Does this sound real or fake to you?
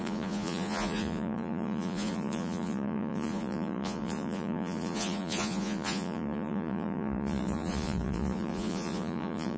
fake